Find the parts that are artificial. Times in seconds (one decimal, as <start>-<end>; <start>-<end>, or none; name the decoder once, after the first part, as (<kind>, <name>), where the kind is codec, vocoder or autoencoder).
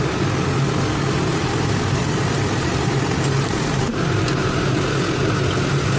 1.3-4.8 (vocoder, BigVGAN v2)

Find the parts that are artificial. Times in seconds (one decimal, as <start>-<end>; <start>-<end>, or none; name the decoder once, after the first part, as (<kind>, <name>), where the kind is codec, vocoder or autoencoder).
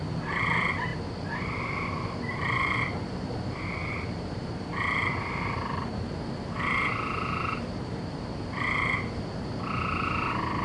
0.0-0.9 (vocoder, BigVGAN v2); 2.2-10.6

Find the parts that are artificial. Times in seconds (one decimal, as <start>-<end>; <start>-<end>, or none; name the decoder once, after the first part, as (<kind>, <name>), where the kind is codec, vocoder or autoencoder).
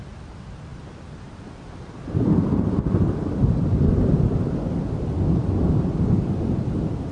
none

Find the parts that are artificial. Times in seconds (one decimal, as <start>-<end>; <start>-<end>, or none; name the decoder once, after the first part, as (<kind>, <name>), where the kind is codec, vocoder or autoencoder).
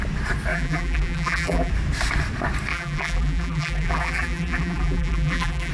0.5-1.7 (vocoder, BigVGAN v2); 2.7-5.7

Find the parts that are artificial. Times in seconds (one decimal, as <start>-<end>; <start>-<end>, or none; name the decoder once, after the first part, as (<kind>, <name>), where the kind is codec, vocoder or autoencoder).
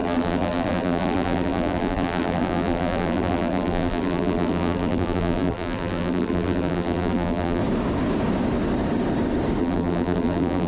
0.0-7.6 (vocoder, BigVGAN v2); 9.6-10.7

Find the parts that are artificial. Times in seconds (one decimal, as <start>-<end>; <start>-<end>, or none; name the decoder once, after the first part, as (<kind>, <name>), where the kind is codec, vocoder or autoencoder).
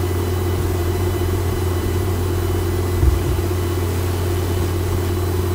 0.8-2.1 (vocoder, BigVGAN v2)